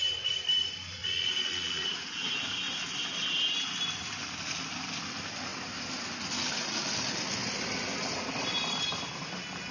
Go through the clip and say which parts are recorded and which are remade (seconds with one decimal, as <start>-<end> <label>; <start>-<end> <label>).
0.0-1.0 recorded; 1.0-2.5 remade; 2.5-9.7 recorded